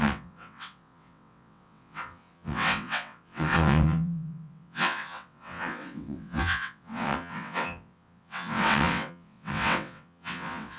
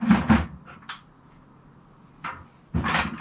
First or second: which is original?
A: second